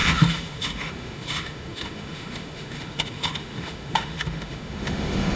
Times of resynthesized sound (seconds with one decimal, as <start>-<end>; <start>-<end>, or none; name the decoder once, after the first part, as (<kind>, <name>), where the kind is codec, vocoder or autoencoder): 0.0-5.4 (autoencoder, DAC-VAE)